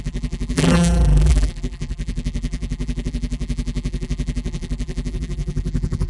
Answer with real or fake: fake